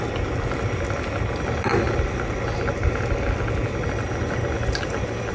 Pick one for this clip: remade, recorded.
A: recorded